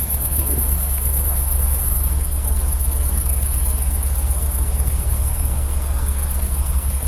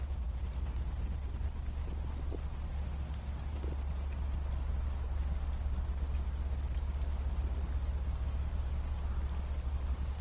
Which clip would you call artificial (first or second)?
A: first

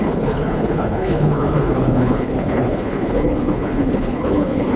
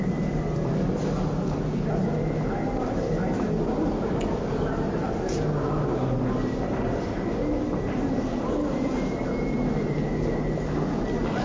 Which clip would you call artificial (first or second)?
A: first